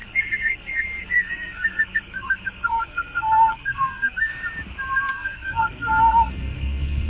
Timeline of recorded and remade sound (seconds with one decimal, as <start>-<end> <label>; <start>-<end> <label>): 0.0-4.3 remade; 4.3-5.1 recorded; 5.1-7.1 remade